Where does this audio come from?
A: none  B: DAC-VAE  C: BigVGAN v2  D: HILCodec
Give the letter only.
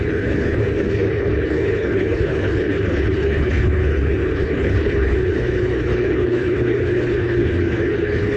D